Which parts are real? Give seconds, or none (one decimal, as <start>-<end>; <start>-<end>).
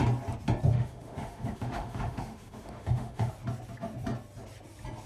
0.0-0.7; 3.3-5.1